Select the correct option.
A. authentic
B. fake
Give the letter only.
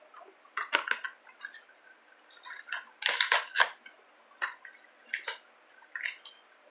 A